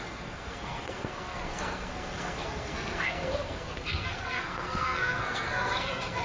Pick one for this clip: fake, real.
fake